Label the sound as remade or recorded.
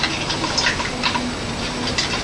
recorded